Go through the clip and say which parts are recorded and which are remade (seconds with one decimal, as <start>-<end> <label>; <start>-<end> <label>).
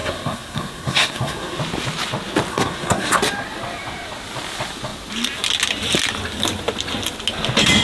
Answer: 0.0-1.6 remade; 1.6-2.5 recorded; 2.5-3.1 remade; 3.1-7.8 recorded